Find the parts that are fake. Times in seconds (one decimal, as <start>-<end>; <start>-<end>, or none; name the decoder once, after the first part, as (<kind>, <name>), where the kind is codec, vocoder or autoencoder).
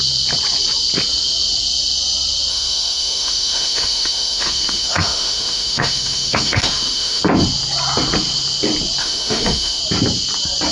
2.5-7.2 (autoencoder, DAC-VAE); 9.0-9.8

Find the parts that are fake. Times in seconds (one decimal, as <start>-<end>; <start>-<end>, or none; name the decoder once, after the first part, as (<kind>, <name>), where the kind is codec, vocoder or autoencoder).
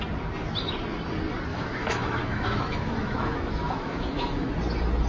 1.5-4.5 (autoencoder, DAC-VAE)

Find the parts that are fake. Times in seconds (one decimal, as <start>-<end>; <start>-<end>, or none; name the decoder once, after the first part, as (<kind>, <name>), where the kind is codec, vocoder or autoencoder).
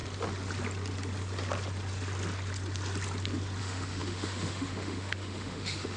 3.6-6.0 (autoencoder, DAC-VAE)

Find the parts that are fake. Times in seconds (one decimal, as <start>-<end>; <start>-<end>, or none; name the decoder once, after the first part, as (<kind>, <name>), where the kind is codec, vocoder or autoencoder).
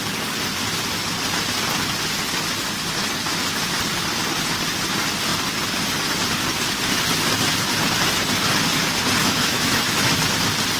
9.2-10.2 (autoencoder, DAC-VAE)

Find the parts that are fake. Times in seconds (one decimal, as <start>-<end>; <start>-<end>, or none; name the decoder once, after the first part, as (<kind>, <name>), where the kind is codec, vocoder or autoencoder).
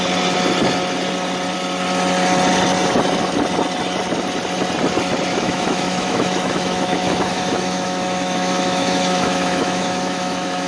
5.3-10.7 (autoencoder, DAC-VAE)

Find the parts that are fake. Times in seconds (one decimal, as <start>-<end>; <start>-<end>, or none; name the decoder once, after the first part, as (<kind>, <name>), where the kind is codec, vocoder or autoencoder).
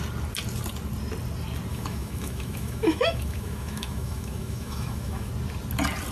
1.7-5.3 (autoencoder, DAC-VAE)